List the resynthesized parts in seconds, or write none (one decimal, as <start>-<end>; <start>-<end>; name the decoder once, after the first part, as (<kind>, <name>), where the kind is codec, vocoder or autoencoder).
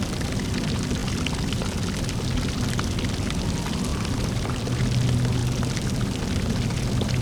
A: 1.0-1.7 (vocoder, BigVGAN v2); 3.9-4.6; 5.4-7.2